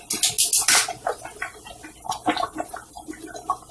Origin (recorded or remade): recorded